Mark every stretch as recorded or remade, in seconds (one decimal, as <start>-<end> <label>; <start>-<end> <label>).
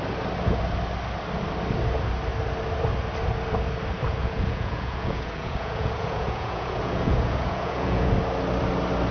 0.0-4.2 recorded; 4.2-8.1 remade; 8.1-9.1 recorded